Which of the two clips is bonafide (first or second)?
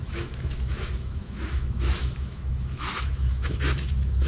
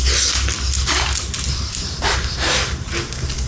second